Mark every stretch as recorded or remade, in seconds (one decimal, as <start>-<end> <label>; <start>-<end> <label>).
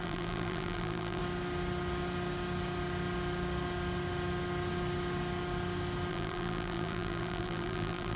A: 0.0-1.2 remade; 1.2-6.1 recorded; 6.1-8.2 remade